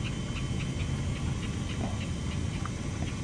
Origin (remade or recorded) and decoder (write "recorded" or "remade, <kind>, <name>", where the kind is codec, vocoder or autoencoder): recorded